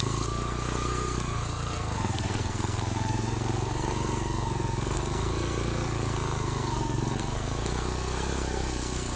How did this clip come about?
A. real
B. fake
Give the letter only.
B